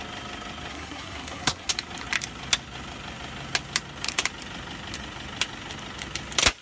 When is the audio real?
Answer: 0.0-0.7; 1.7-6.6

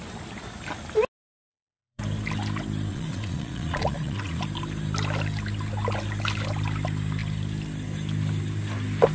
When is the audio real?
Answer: 0.0-1.5; 2.0-2.9; 4.4-9.1

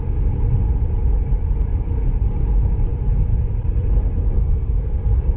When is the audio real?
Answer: 0.0-4.3